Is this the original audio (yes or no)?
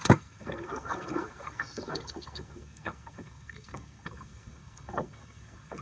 no